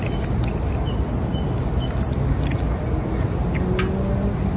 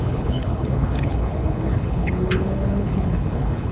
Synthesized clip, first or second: second